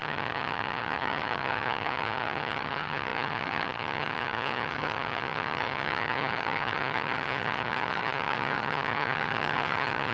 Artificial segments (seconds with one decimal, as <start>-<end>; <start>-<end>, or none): 0.0-10.1